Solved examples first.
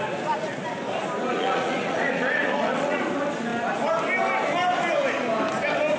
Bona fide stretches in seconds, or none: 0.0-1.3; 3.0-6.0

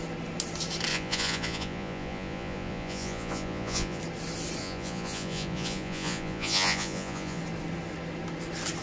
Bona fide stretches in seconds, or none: 0.0-0.9; 4.0-4.6; 7.4-8.8